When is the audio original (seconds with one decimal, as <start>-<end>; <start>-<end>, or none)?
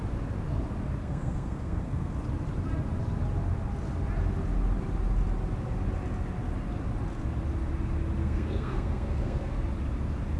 0.0-1.0; 2.1-8.2; 9.6-10.4